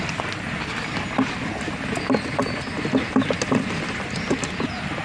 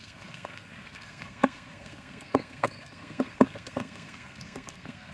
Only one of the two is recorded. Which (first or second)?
first